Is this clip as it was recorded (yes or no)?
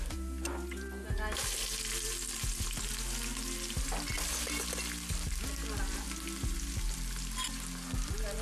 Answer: yes